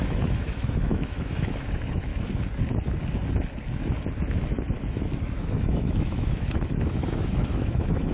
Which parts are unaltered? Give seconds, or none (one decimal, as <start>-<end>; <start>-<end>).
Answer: 2.1-4.5